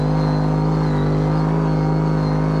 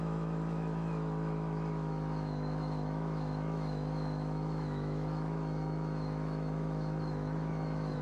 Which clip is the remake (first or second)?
second